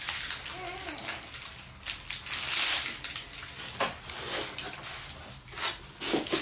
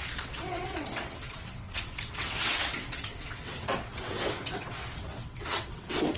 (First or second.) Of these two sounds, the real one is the first